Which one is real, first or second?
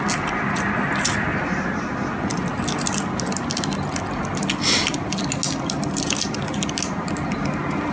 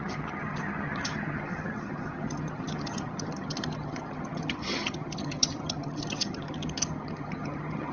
first